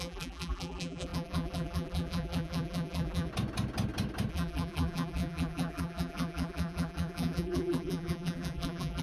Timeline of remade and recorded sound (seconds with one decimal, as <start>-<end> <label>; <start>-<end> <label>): 0.0-3.3 remade; 3.3-4.3 recorded; 4.3-9.0 remade